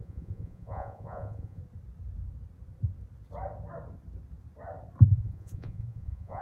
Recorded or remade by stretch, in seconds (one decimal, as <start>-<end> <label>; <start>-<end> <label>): 0.0-1.6 remade; 1.6-5.1 recorded; 5.1-6.4 remade